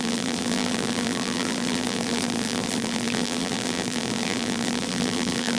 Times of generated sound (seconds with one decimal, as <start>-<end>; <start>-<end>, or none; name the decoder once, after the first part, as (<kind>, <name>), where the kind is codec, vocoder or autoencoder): 0.0-5.6 (vocoder, BigVGAN v2)

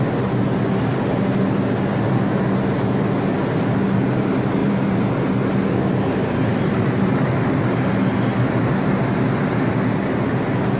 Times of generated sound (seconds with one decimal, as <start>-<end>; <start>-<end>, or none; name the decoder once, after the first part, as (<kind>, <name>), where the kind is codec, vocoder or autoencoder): 4.6-5.2 (vocoder, BigVGAN v2); 6.4-7.9

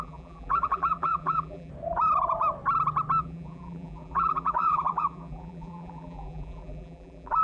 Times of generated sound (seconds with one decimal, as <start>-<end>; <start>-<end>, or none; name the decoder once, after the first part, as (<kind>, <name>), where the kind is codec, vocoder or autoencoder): 0.0-1.7 (vocoder, BigVGAN v2); 3.2-7.4